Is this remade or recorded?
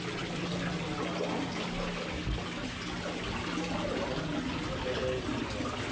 recorded